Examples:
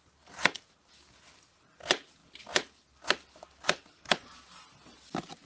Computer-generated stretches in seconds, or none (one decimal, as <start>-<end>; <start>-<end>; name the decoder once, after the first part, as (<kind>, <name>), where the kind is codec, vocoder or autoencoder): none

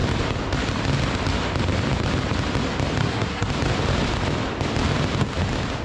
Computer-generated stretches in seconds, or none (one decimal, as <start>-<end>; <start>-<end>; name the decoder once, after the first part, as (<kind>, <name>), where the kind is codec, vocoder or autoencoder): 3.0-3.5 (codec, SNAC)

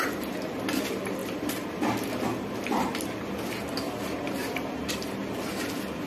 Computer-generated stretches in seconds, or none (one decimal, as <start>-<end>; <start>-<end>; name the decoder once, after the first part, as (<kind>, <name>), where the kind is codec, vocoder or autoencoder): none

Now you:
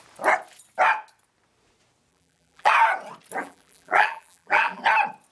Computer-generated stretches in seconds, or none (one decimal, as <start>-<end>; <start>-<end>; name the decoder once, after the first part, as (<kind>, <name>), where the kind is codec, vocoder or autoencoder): 2.1-2.7 (vocoder, BigVGAN v2); 3.4-4.8

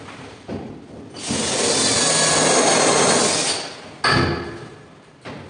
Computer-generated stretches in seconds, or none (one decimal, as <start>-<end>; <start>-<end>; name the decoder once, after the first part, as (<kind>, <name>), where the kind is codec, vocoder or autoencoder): none